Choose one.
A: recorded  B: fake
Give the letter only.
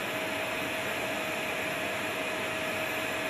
A